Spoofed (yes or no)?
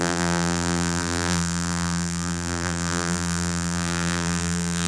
yes